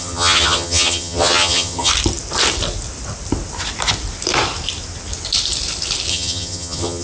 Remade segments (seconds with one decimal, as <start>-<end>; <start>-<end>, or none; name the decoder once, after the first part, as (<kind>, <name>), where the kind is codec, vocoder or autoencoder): 0.0-1.9 (vocoder, HiFi-GAN); 6.1-7.0